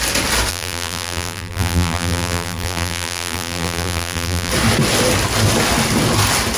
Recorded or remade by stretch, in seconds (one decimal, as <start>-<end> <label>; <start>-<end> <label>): 0.0-0.5 recorded; 0.5-4.5 remade; 4.5-6.6 recorded

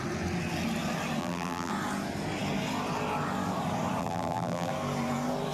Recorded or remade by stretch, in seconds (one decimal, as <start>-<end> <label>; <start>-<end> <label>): 0.0-1.2 recorded; 1.2-1.7 remade; 1.7-4.0 recorded; 4.0-4.7 remade; 4.7-5.5 recorded

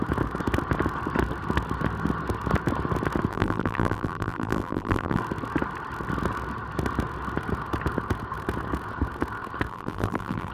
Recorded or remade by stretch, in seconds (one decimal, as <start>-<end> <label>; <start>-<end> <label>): 0.0-3.3 recorded; 3.3-5.2 remade; 5.2-9.7 recorded; 9.7-10.5 remade

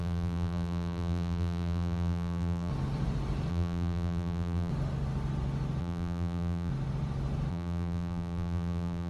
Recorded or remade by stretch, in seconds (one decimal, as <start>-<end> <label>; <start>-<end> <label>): 0.0-2.7 remade; 2.7-3.5 recorded; 3.5-4.7 remade; 4.7-5.8 recorded; 5.8-6.7 remade; 6.7-7.5 recorded; 7.5-9.1 remade

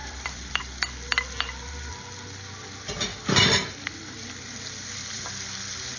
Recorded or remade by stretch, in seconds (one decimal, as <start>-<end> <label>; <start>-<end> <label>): 0.0-0.6 remade; 0.6-3.1 recorded; 3.1-4.4 remade; 4.4-6.0 recorded

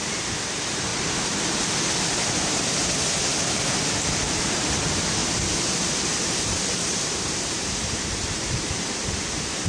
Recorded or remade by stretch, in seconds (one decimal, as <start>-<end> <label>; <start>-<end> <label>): 0.0-0.9 remade; 0.9-4.4 recorded; 4.4-9.7 remade